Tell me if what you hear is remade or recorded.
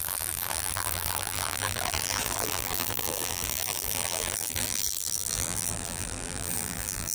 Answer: remade